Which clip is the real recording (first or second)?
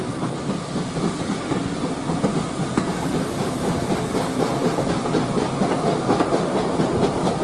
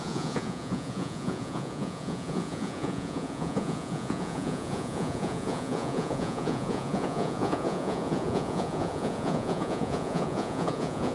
first